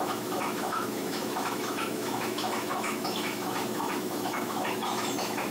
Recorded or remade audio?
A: remade